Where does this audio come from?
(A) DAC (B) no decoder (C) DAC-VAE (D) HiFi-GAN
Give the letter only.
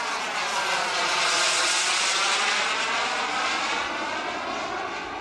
B